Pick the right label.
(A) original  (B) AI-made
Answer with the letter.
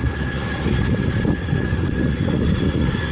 B